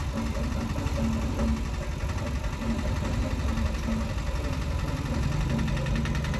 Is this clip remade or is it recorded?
recorded